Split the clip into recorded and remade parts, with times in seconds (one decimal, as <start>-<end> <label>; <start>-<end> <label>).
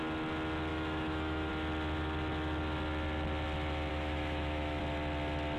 0.0-0.7 recorded; 0.7-1.5 remade; 1.5-3.9 recorded; 3.9-4.8 remade; 4.8-5.6 recorded